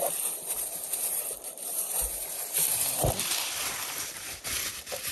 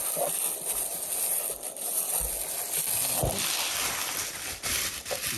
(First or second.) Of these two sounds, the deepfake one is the first